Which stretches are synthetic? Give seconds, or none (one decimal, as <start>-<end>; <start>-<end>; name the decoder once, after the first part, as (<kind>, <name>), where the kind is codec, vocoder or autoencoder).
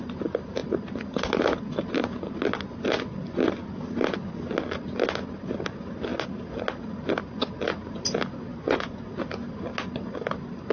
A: 8.5-9.2 (vocoder, Vocos)